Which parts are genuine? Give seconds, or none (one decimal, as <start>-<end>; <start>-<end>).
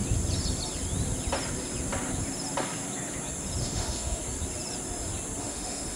0.0-3.6; 4.2-5.4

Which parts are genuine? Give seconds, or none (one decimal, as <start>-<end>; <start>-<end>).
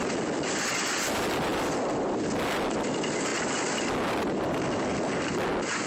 0.0-5.9